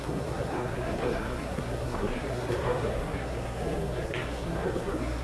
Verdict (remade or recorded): remade